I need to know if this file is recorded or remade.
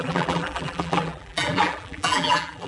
remade